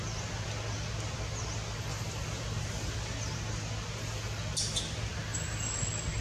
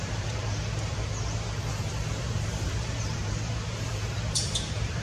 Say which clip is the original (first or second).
first